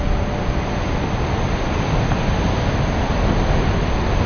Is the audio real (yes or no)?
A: yes